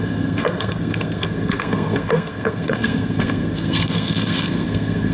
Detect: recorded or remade remade